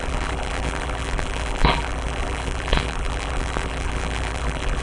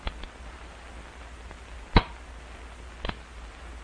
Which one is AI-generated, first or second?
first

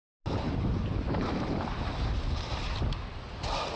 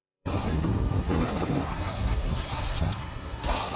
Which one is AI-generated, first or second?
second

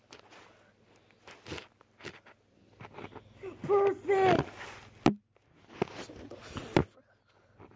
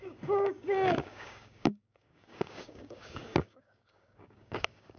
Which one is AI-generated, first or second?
second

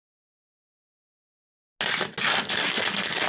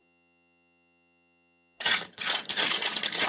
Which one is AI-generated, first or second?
second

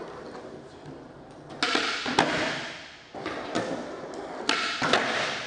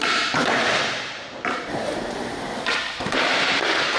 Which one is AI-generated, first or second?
second